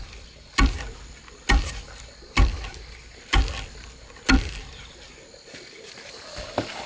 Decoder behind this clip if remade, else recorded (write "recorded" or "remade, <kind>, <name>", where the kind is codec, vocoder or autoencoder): recorded